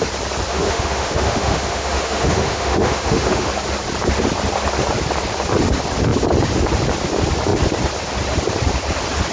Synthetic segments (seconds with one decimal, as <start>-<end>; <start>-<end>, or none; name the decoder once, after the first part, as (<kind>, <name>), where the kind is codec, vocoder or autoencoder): 0.5-3.5 (autoencoder, DAC-VAE)